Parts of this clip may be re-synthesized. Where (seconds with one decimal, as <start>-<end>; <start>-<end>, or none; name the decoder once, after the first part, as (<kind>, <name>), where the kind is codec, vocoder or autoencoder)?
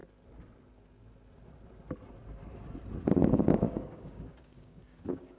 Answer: 3.2-5.4 (codec, DAC)